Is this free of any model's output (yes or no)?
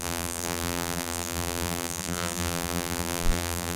no